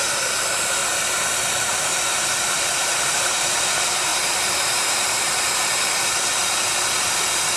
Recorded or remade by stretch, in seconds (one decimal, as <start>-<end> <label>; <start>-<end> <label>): 0.0-0.8 remade; 0.8-1.4 recorded; 1.4-6.3 remade; 6.3-7.6 recorded